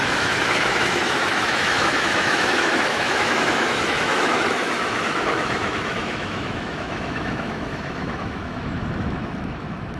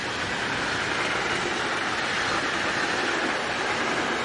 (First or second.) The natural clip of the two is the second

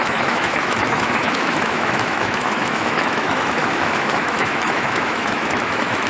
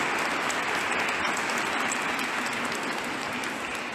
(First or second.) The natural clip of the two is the second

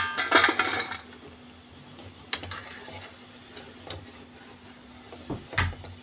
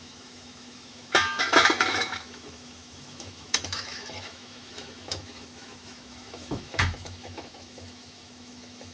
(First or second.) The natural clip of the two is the first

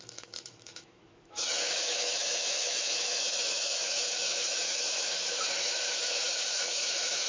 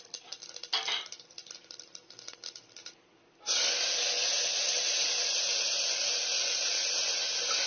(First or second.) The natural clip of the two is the second